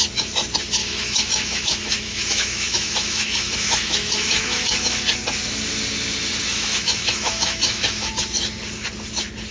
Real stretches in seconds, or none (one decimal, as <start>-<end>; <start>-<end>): 0.0-0.8; 5.0-6.5; 8.1-9.5